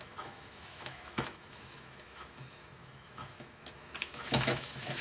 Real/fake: fake